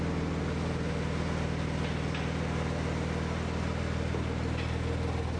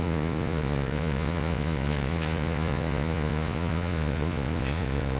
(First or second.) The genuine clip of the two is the first